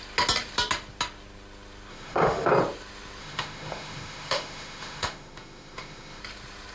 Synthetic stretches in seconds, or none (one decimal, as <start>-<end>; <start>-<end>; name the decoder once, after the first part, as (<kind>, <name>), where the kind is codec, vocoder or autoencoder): 1.9-2.5 (autoencoder, DAC-VAE); 3.2-6.2